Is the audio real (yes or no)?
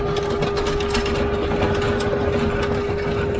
yes